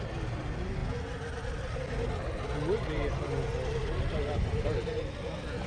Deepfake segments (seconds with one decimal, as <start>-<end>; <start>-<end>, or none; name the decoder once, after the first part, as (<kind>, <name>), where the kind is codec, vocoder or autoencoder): none